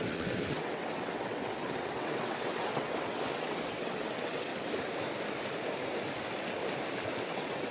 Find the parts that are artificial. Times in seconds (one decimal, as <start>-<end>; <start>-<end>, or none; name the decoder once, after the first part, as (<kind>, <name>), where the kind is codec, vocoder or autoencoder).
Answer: 0.0-4.5 (vocoder, WaveNeXt); 7.2-7.7